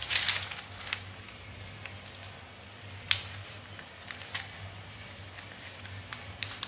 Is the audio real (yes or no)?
yes